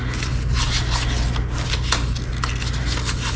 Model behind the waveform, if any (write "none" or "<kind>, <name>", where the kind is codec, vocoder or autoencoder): none